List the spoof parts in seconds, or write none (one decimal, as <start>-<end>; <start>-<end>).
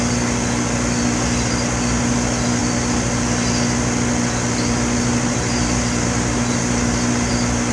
none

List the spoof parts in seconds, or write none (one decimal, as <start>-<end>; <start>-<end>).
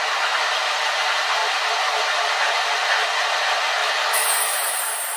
3.8-4.8